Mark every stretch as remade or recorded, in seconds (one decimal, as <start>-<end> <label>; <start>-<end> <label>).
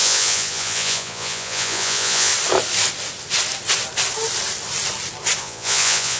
0.0-2.3 remade; 2.3-5.4 recorded; 5.4-6.2 remade